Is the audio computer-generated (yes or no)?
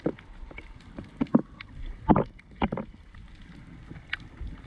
no